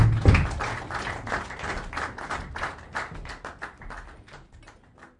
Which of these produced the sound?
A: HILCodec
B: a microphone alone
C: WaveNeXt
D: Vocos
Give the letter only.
B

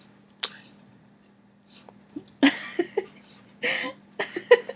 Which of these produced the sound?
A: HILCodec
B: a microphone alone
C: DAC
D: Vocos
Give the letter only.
B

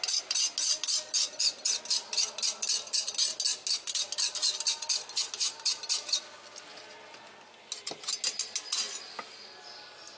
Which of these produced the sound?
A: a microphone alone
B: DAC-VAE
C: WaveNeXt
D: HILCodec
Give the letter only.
A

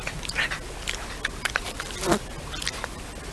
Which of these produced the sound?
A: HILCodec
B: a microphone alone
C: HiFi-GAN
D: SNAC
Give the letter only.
B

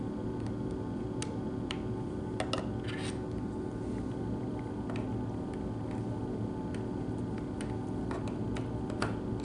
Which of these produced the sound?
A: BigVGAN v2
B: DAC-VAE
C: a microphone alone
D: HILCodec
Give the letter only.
C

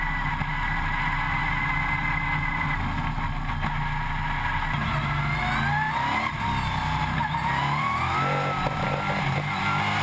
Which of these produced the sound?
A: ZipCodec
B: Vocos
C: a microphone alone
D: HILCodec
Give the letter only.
C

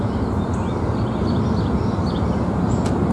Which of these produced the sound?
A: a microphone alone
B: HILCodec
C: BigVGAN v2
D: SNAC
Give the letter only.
A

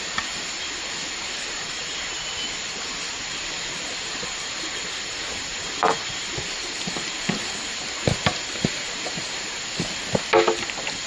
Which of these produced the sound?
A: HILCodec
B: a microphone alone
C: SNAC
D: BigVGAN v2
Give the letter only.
B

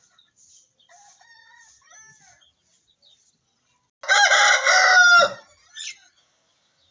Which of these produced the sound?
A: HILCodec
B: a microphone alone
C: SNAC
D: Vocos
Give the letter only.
B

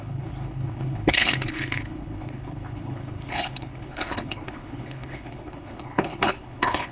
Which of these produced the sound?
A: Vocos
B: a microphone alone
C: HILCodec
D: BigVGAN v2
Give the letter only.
C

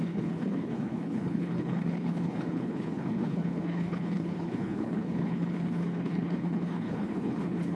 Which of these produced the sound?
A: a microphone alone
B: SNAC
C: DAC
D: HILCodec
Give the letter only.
D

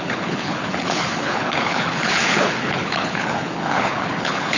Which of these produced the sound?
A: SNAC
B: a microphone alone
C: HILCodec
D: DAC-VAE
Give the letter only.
C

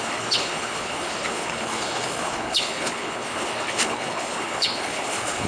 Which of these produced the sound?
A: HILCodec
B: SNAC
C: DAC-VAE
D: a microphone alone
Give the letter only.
A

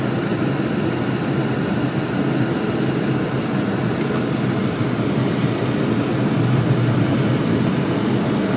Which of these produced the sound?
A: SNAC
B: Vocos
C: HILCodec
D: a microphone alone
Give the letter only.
D